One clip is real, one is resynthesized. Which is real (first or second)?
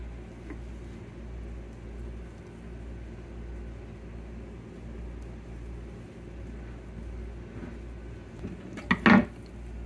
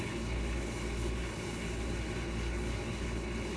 first